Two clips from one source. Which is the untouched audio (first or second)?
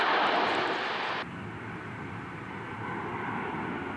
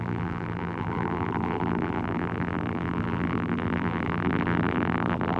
first